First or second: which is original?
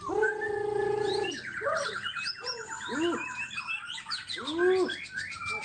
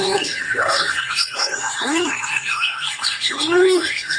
first